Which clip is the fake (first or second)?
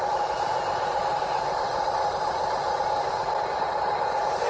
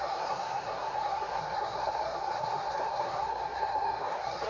second